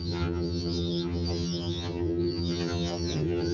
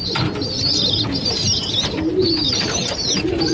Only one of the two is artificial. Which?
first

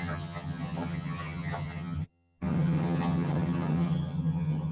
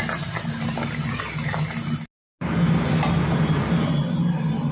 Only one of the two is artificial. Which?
first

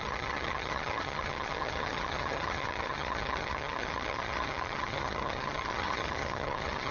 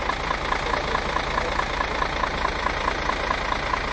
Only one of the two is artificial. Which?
first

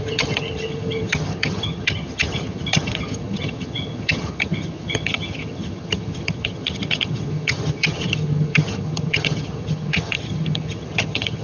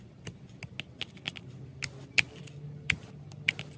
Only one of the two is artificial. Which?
first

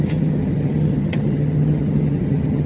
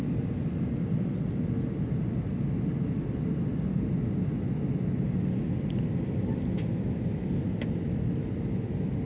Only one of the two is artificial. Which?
first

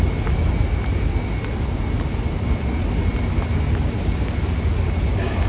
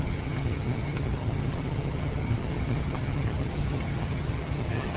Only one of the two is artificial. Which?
second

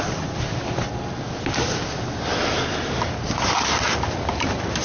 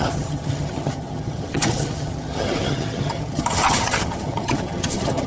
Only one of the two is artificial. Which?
second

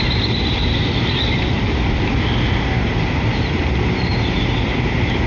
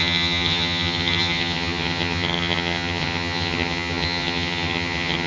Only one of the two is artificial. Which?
second